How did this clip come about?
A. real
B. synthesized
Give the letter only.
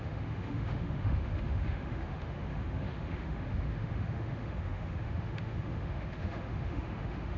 B